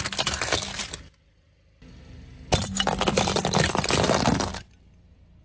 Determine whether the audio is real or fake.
real